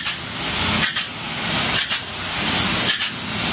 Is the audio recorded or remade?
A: recorded